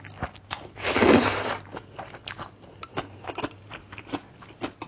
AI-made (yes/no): no